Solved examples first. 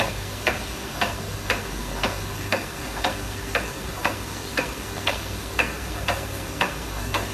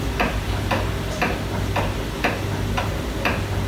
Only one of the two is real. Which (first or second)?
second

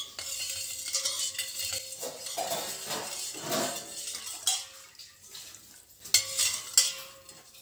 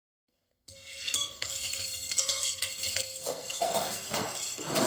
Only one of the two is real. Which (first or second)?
first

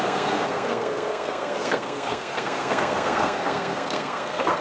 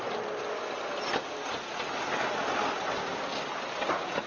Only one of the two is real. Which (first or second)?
second